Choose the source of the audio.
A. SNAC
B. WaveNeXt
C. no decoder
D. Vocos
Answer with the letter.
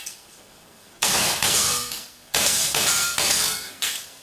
A